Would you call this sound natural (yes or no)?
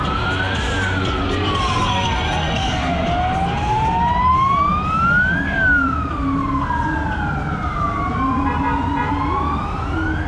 yes